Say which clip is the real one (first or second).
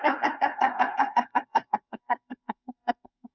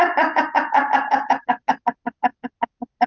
second